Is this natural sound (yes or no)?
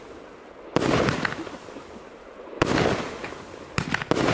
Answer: yes